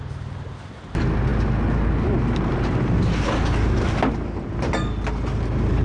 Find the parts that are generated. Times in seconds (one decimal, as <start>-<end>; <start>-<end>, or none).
none